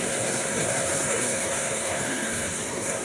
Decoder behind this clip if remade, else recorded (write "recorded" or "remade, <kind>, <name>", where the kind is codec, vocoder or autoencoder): remade, codec, SNAC